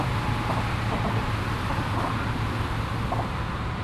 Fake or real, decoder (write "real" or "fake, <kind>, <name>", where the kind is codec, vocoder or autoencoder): real